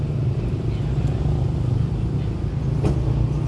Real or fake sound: fake